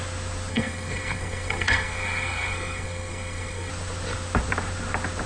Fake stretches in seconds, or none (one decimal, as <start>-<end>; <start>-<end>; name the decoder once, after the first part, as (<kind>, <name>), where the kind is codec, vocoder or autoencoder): 0.5-3.7 (codec, SNAC)